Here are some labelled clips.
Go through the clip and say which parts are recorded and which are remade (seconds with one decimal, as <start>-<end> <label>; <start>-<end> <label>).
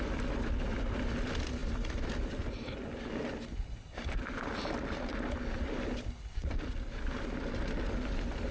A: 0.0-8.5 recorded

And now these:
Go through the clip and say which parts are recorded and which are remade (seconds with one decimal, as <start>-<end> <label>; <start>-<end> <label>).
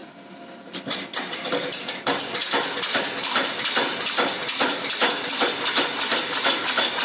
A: 0.0-7.0 recorded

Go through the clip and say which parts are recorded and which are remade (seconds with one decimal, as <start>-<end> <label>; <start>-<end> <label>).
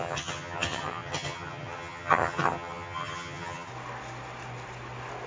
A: 0.0-3.7 remade; 3.7-5.3 recorded